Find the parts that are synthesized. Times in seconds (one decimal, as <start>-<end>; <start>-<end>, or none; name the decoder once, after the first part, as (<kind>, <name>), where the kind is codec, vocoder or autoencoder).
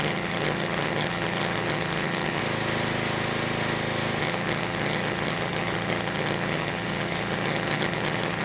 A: 0.0-2.4 (vocoder, HiFi-GAN); 4.2-8.4